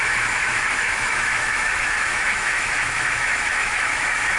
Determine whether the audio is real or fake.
fake